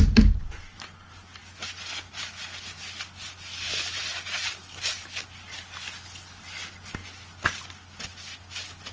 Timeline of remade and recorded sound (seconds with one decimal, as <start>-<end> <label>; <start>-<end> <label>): 0.0-8.9 recorded